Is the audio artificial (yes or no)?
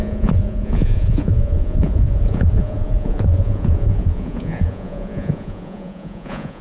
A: yes